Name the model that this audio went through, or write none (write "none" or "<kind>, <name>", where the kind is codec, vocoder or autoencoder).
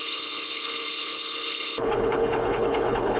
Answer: codec, HILCodec